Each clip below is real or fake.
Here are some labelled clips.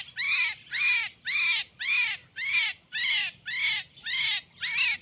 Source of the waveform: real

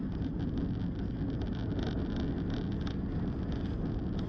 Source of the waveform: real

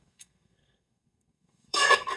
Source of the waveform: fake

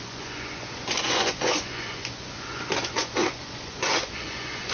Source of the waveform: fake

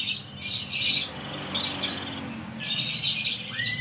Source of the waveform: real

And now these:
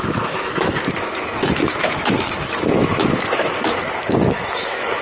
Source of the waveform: fake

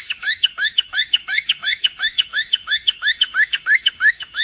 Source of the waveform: fake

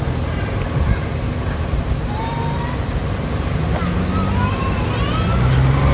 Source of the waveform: real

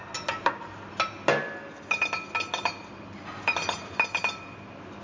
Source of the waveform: real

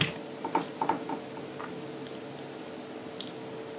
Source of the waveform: real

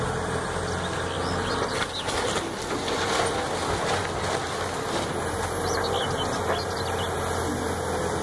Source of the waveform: real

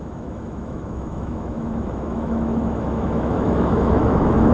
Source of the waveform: fake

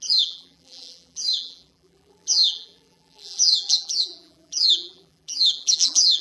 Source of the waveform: fake